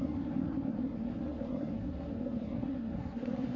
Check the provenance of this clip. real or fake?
fake